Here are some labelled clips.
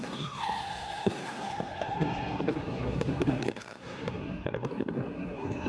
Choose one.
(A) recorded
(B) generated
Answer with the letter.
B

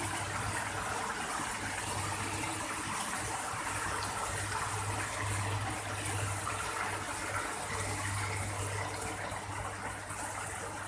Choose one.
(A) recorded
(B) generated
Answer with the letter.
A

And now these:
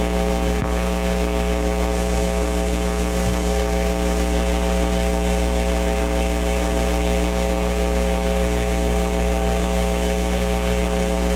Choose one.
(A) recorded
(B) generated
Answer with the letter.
B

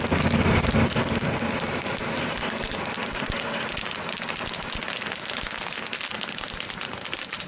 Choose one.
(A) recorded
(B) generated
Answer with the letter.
A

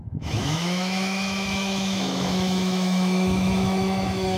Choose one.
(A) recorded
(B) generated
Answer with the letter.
B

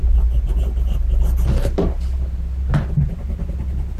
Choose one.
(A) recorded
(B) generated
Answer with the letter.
A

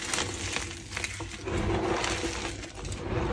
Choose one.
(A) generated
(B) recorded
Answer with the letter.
B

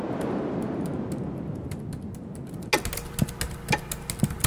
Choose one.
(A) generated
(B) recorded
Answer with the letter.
B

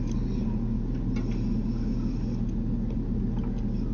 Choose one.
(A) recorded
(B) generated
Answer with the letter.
A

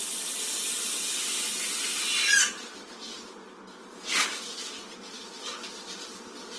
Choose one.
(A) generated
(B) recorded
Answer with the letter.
B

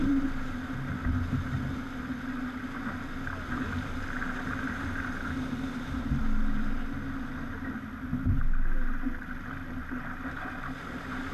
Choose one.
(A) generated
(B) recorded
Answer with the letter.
B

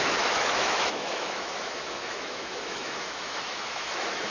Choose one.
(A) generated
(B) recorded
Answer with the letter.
A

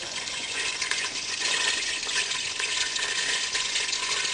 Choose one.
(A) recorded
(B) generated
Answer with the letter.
B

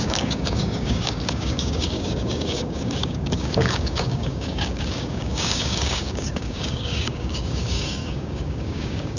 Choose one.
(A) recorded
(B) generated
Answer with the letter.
B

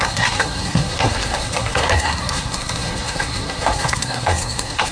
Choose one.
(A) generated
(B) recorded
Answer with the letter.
A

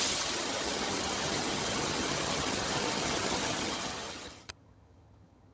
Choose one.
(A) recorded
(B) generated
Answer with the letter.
B